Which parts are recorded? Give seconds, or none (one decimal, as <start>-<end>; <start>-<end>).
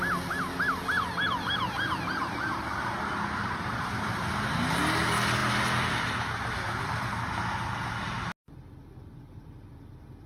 0.0-10.3